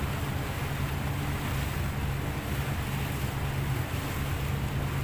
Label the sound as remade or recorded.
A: recorded